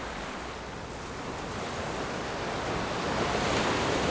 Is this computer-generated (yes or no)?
no